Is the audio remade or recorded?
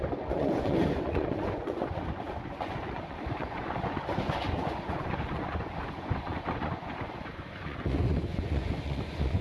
remade